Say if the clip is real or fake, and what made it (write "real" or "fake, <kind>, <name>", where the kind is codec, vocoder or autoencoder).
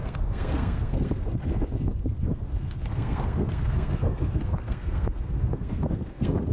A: fake, codec, SNAC